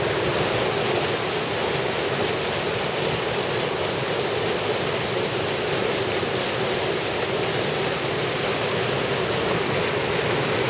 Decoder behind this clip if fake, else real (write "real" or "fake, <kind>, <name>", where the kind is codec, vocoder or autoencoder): real